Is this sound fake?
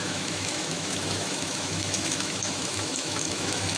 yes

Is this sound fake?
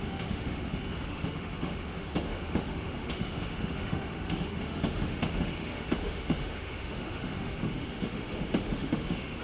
yes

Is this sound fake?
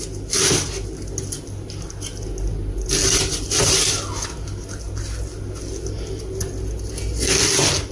no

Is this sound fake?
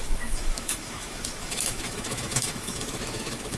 yes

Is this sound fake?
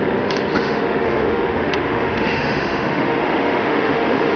yes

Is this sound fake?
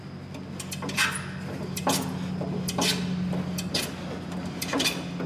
no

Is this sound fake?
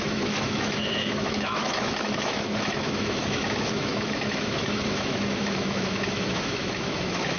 yes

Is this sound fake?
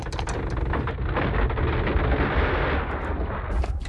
no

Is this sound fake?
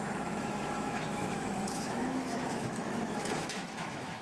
yes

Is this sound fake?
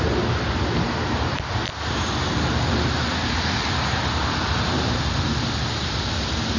no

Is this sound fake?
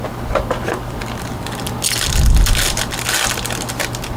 no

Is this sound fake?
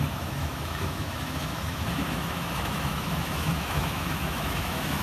yes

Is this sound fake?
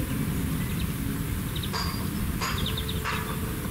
no